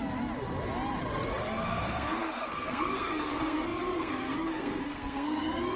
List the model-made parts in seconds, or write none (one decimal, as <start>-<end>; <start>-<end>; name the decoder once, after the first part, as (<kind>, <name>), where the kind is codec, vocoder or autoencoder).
1.6-5.8 (codec, SNAC)